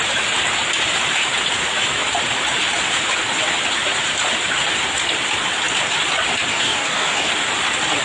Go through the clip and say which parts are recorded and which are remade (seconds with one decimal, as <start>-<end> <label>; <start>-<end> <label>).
0.0-6.5 recorded; 6.5-7.3 remade; 7.3-8.0 recorded

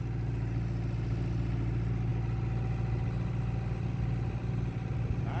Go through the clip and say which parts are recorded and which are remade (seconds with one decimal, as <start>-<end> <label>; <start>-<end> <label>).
0.0-5.4 recorded

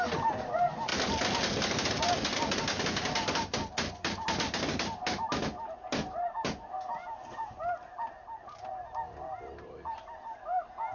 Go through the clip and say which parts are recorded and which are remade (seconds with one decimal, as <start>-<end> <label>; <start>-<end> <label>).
0.0-10.9 recorded

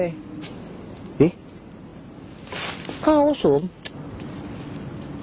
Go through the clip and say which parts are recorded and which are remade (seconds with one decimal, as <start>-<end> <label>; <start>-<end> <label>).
0.0-5.2 recorded

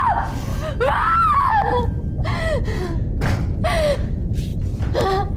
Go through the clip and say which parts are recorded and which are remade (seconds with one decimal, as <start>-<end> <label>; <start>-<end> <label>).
0.0-5.4 recorded

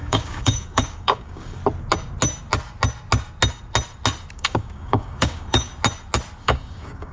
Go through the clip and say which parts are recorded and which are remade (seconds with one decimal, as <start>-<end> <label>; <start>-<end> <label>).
0.0-1.6 remade; 1.6-4.3 recorded; 4.3-5.7 remade; 5.7-6.4 recorded; 6.4-7.1 remade

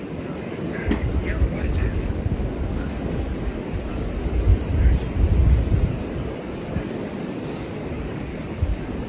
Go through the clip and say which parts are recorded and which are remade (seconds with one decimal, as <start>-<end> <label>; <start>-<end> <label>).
0.0-4.5 remade; 4.5-5.5 recorded; 5.5-9.1 remade

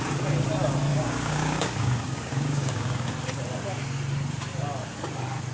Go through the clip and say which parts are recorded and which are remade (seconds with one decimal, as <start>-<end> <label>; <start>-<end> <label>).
0.0-0.9 recorded; 0.9-3.1 remade; 3.1-5.5 recorded